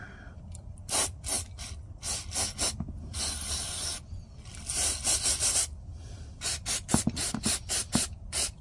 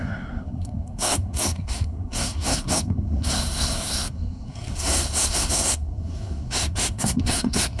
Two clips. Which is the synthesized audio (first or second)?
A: second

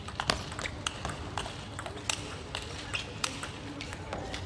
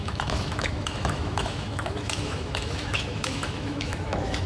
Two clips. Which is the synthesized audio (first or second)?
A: second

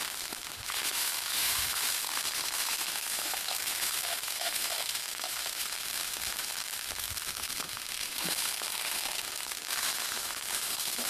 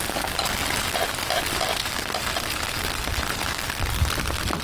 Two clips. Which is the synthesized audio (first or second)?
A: first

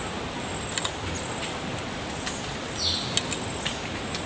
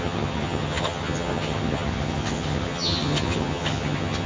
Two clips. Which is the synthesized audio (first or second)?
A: second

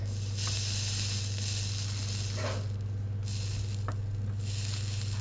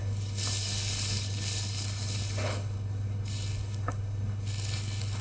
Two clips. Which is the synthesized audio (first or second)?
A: second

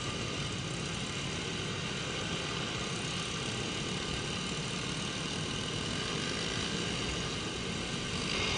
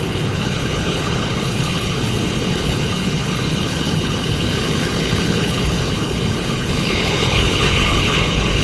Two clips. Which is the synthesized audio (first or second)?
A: second